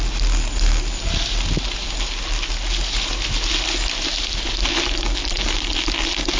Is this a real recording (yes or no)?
yes